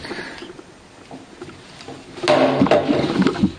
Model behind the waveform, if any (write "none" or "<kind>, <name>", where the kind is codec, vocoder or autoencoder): none